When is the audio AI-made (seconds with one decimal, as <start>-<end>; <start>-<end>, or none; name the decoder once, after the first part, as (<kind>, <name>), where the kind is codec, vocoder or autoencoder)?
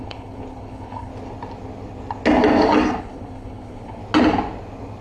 0.0-1.1 (codec, HILCodec); 3.0-4.0